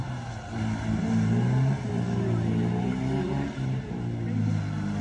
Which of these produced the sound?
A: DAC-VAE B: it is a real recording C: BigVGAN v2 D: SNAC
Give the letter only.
B